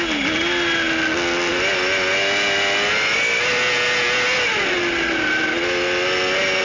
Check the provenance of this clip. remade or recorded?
recorded